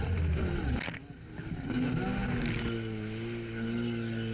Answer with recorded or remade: recorded